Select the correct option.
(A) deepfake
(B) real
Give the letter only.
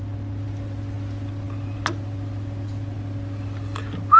B